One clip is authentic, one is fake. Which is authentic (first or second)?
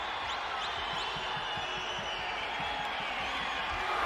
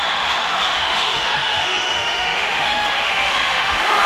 first